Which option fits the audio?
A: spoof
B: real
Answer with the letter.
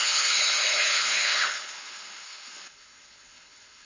A